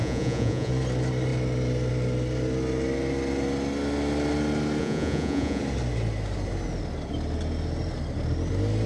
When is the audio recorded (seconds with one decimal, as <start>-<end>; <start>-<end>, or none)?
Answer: 0.7-4.8; 5.6-8.9

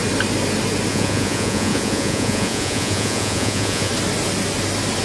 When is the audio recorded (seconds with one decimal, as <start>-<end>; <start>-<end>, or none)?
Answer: 0.0-0.9; 3.9-5.0

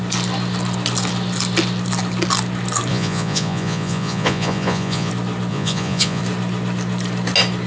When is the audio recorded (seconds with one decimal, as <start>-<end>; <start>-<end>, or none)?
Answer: 0.0-2.9; 5.1-5.5; 6.2-7.7

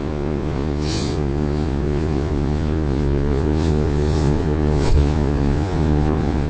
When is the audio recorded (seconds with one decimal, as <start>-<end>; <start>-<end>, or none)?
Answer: none

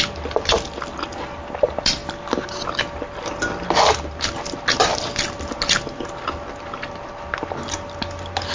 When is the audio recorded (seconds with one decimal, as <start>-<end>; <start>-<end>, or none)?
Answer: 0.0-8.5

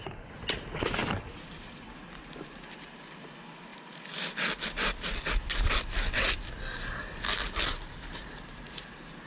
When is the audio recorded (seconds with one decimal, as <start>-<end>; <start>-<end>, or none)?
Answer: 0.0-9.3

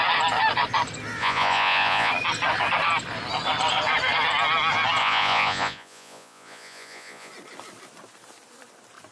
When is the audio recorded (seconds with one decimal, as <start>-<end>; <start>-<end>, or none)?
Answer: 0.0-1.2; 2.1-5.0; 7.3-9.1

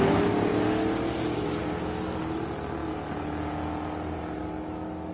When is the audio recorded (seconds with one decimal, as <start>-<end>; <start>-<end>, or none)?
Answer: 0.0-5.1